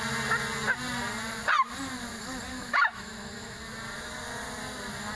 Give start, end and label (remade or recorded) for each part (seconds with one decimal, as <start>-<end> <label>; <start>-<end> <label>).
0.0-2.5 recorded; 2.5-3.6 remade; 3.6-5.2 recorded